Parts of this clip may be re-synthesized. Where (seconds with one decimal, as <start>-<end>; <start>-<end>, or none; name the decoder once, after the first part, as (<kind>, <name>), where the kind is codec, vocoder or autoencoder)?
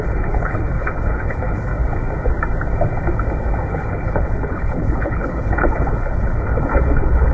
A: 0.0-1.7 (codec, HILCodec); 3.7-7.3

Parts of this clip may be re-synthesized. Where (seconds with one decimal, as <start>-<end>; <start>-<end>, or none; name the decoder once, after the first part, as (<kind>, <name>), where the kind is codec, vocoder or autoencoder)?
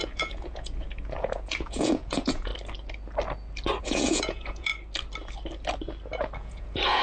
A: 0.0-2.5 (vocoder, Vocos); 3.8-4.7; 6.4-7.0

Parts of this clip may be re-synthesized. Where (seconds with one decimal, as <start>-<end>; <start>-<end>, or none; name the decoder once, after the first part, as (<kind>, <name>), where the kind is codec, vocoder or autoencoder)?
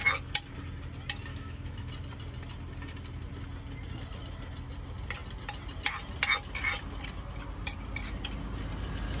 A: 1.3-1.9 (autoencoder, DAC-VAE)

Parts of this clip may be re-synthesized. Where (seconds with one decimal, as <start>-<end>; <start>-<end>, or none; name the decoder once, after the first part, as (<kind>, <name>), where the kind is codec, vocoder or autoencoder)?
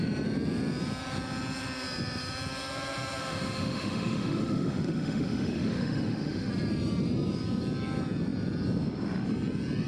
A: 3.2-6.5 (autoencoder, DAC-VAE)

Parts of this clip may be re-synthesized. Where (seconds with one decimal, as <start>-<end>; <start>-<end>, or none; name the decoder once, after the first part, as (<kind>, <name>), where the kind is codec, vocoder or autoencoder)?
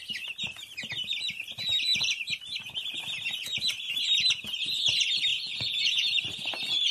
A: 5.3-6.2 (vocoder, Vocos)